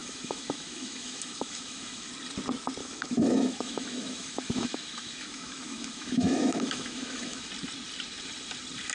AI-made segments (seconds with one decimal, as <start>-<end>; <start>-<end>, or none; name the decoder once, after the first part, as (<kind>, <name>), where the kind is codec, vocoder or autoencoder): 0.0-2.1 (autoencoder, DAC-VAE); 2.8-7.5